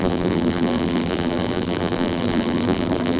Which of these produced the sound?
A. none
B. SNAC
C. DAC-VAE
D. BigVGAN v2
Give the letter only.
D